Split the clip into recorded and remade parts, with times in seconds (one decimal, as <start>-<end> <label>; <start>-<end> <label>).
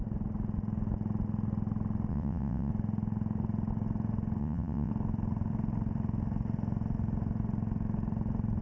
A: 0.0-2.1 recorded; 2.1-2.7 remade; 2.7-4.4 recorded; 4.4-4.9 remade; 4.9-8.6 recorded